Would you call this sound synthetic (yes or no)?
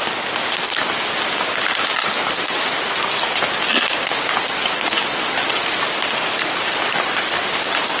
no